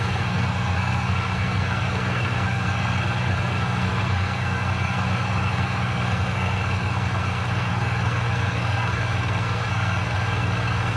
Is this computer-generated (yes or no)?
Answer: yes